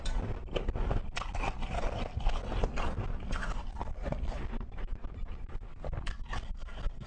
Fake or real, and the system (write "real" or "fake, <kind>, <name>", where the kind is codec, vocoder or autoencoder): real